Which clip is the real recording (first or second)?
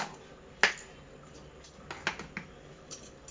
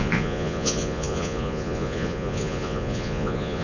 first